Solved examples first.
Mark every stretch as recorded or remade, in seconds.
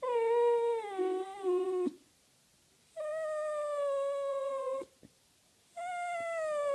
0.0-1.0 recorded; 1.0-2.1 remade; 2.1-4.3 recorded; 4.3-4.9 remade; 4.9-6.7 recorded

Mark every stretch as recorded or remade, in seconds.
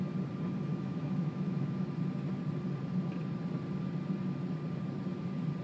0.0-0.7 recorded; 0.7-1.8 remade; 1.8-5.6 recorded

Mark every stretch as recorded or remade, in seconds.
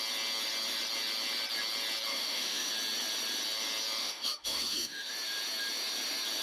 0.0-2.1 recorded; 2.1-2.7 remade; 2.7-4.0 recorded; 4.0-5.1 remade; 5.1-6.4 recorded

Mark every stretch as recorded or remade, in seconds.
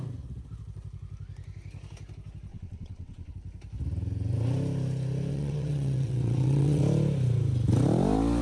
0.0-2.5 recorded; 2.5-3.3 remade; 3.3-5.3 recorded; 5.3-6.8 remade; 6.8-8.4 recorded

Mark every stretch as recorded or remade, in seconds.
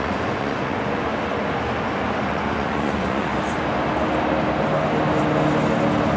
0.0-1.1 remade; 1.1-2.3 recorded; 2.3-3.3 remade; 3.3-6.2 recorded